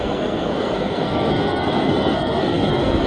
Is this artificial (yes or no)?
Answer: yes